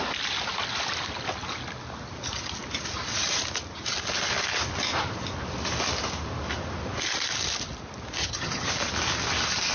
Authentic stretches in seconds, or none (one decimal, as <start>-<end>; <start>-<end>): 0.0-8.2; 8.7-9.7